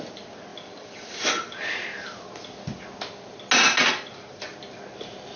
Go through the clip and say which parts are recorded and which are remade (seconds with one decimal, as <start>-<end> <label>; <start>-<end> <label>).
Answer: 0.0-0.5 recorded; 0.5-1.7 remade; 1.7-3.8 recorded; 3.8-4.5 remade; 4.5-5.4 recorded